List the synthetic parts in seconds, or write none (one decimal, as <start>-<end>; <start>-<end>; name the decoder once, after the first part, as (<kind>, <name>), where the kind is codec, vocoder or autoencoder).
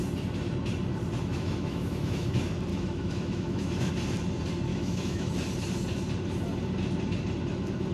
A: 1.3-2.3 (autoencoder, DAC-VAE); 2.7-3.9; 4.7-5.3